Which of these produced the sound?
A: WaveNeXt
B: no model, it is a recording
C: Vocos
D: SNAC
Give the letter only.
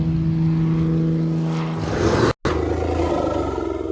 B